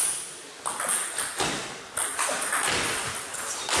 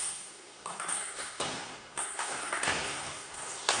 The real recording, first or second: first